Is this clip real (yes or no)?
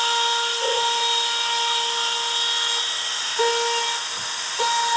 yes